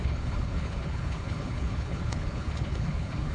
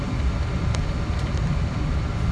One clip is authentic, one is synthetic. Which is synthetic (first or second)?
first